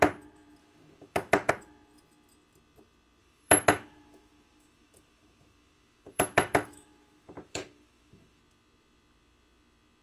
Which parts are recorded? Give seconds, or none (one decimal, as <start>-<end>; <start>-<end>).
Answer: 0.0-0.6; 1.5-3.2; 8.4-10.0